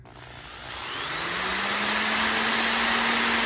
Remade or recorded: recorded